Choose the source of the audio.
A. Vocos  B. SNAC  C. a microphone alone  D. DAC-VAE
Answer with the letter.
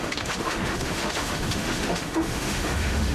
D